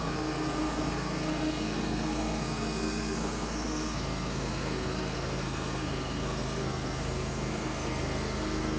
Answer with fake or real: fake